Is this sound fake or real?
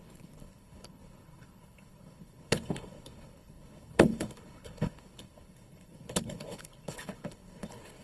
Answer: fake